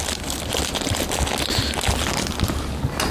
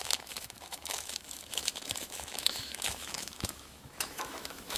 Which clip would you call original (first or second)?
first